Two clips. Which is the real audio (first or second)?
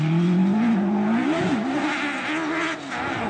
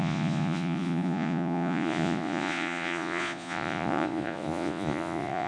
first